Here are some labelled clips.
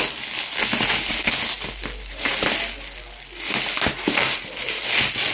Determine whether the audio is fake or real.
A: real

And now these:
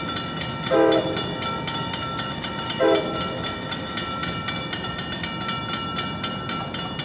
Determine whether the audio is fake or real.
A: real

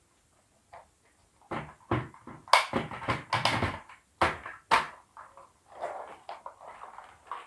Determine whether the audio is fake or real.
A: real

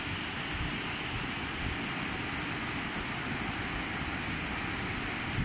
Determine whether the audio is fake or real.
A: real